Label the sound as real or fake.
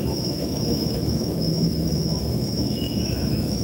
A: fake